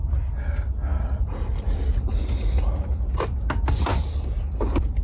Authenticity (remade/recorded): recorded